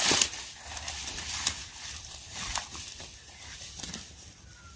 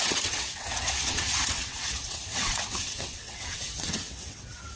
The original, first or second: first